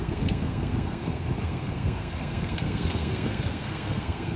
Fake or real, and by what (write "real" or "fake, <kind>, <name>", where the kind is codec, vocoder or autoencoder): fake, codec, SNAC